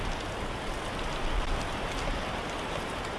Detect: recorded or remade recorded